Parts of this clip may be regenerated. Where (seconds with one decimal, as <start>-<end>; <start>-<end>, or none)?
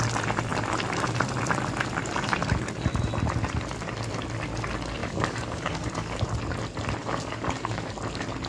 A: 5.0-6.2; 7.0-7.9